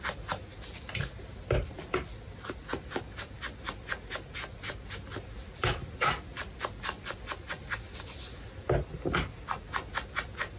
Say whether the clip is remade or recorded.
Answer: recorded